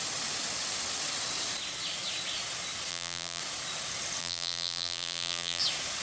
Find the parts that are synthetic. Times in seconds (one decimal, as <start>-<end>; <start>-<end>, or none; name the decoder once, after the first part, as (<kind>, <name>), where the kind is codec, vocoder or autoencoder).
2.9-3.4 (vocoder, BigVGAN v2); 4.2-5.6